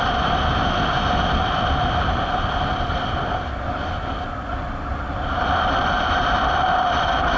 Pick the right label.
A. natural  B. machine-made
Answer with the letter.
A